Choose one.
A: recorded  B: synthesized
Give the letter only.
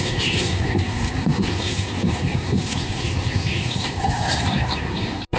B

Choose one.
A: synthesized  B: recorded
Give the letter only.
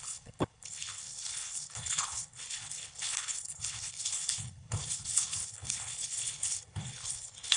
A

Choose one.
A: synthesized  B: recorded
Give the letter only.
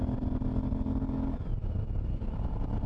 B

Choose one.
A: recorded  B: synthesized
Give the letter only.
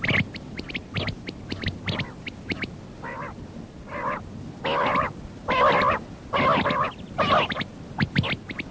A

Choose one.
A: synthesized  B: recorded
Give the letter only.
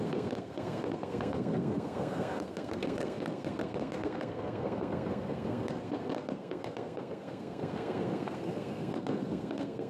A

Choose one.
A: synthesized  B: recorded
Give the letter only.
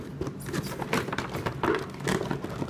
B